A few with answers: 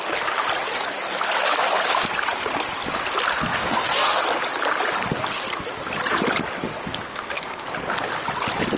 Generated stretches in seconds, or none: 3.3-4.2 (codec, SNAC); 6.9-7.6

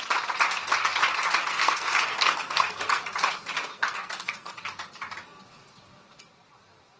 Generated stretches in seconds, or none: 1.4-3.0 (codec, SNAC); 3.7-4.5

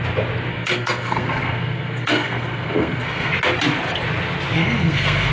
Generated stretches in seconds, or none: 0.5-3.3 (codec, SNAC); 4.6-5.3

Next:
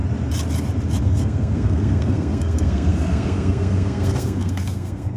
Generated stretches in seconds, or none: 1.0-5.2 (codec, SNAC)